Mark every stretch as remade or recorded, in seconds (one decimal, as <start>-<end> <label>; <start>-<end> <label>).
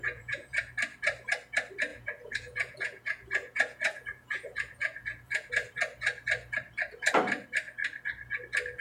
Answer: 0.0-0.6 remade; 0.6-1.9 recorded; 1.9-5.5 remade; 5.5-8.8 recorded